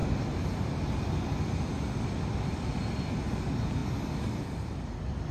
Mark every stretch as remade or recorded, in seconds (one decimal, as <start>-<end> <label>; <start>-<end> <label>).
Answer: 0.0-5.3 recorded